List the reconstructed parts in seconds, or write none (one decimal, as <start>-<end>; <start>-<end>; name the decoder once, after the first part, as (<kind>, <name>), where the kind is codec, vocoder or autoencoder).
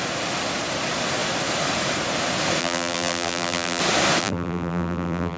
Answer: 2.6-3.8 (vocoder, BigVGAN v2); 4.2-5.4